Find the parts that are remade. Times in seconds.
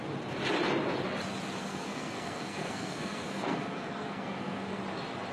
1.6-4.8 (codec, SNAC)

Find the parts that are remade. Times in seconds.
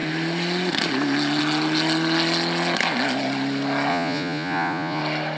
3.9-5.0 (vocoder, Vocos)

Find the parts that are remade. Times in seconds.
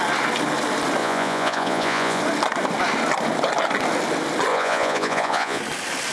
1.0-2.2 (vocoder, Vocos); 4.5-5.6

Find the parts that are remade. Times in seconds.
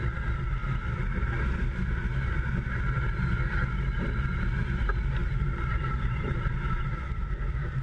5.2-6.9 (vocoder, BigVGAN v2)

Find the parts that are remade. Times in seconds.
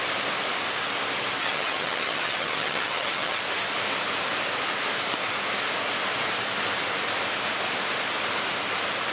1.4-3.4 (vocoder, HiFi-GAN)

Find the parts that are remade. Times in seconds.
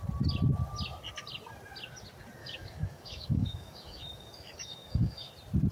2.4-5.3 (codec, DAC)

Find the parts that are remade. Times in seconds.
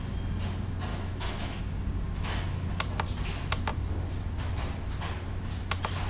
0.9-1.6 (autoencoder, DAC-VAE)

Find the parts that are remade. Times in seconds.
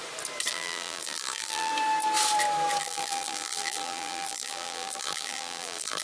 0.5-1.7 (vocoder, BigVGAN v2); 2.8-6.0